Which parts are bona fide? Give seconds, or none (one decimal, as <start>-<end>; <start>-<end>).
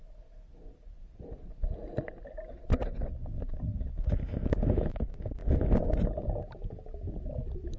0.0-7.8